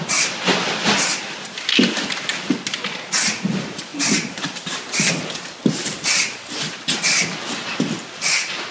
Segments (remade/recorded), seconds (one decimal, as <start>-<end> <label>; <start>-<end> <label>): 0.0-8.7 recorded